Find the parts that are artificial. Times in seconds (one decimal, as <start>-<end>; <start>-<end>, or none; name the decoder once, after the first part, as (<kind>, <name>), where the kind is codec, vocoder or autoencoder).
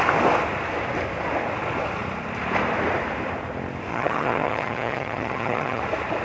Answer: 3.9-5.8 (vocoder, HiFi-GAN)